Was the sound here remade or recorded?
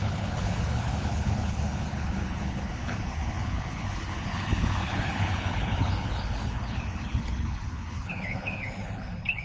remade